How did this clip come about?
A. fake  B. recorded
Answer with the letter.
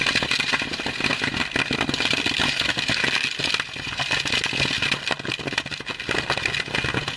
B